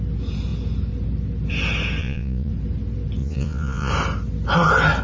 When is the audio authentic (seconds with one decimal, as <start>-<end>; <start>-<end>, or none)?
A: 0.0-2.0; 2.5-3.2; 3.9-5.0